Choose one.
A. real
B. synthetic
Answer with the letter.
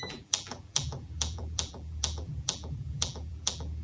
B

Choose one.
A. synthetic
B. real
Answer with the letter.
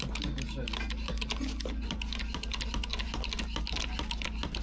B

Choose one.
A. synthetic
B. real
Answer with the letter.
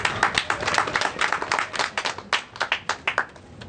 B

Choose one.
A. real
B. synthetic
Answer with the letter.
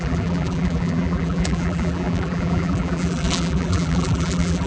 B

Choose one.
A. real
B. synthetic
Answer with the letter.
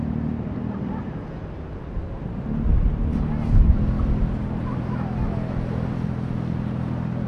A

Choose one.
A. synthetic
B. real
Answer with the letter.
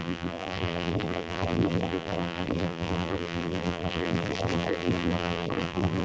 A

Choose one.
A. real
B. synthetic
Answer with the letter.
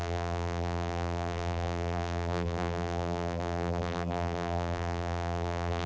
B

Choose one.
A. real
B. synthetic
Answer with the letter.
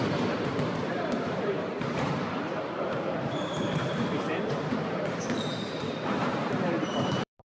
B